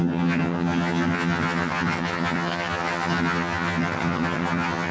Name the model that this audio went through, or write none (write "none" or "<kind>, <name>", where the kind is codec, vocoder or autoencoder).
vocoder, HiFi-GAN